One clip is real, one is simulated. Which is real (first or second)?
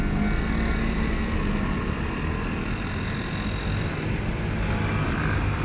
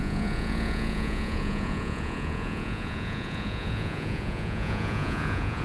first